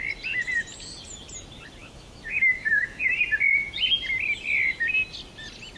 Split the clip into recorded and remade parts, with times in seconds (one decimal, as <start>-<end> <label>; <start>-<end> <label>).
0.0-1.8 recorded; 1.8-3.2 remade; 3.2-5.8 recorded